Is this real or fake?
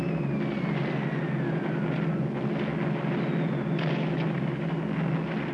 real